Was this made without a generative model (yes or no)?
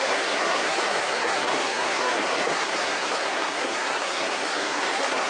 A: no